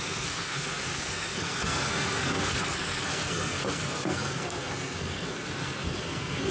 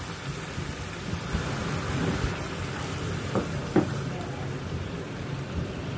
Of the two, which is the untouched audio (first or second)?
second